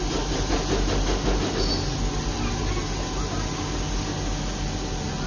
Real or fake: real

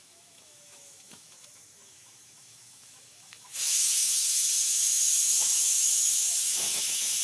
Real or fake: fake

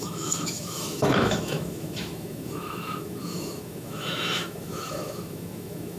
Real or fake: fake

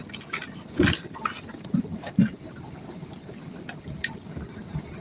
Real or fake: real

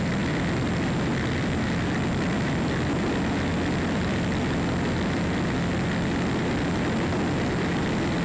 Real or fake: real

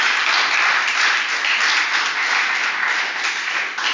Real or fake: real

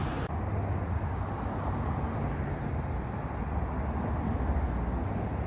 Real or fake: real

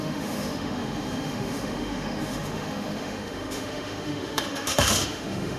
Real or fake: fake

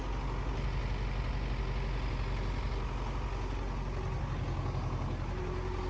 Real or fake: real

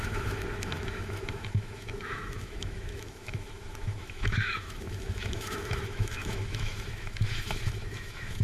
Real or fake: fake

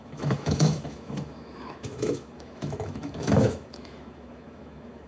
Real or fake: fake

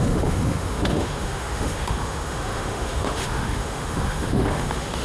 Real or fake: fake